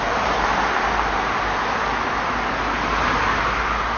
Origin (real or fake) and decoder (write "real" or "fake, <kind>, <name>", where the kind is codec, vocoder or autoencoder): real